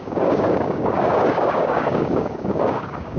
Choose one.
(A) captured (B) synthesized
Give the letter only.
B